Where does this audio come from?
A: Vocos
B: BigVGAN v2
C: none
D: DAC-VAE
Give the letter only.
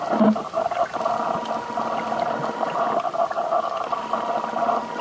C